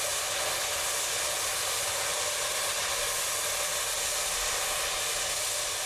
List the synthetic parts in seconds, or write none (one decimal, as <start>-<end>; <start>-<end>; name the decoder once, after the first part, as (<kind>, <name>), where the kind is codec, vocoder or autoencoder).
none